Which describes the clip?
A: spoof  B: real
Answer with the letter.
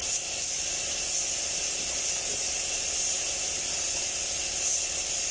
B